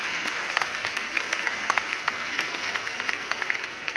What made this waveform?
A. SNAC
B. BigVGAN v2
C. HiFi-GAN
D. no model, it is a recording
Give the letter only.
A